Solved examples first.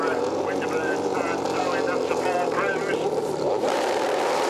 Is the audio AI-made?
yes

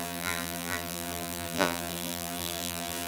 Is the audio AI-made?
yes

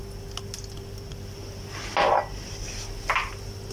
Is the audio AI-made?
no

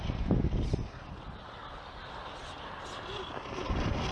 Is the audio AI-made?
no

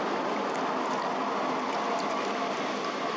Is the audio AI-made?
no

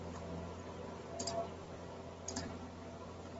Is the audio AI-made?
no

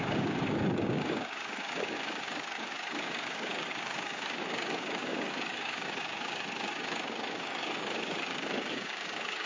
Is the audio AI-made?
yes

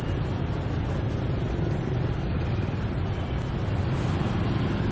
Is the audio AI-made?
no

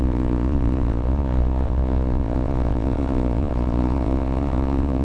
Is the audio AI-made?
yes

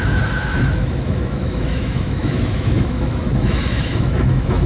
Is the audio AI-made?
yes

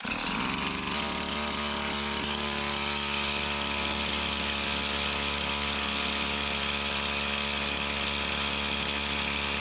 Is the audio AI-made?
no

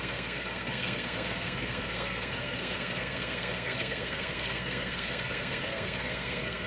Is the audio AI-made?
yes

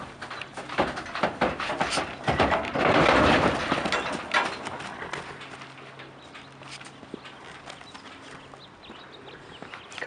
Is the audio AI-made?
no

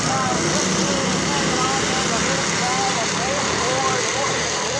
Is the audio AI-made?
no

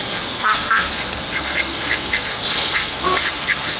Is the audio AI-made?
yes